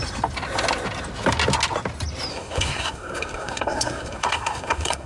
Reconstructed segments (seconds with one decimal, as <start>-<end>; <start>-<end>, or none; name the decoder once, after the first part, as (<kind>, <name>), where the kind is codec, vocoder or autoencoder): 2.3-5.1 (codec, SNAC)